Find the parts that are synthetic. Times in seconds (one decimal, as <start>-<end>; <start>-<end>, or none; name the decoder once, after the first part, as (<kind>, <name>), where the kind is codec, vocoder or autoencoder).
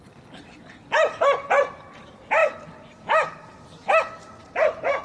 none